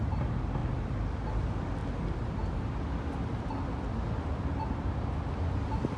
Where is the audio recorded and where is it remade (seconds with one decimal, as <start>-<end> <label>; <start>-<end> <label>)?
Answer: 0.0-6.0 recorded